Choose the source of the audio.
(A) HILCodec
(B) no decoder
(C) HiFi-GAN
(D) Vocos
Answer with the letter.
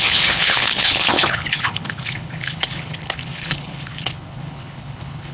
A